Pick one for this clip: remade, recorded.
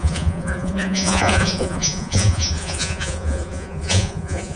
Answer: remade